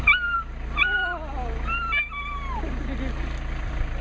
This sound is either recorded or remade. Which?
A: recorded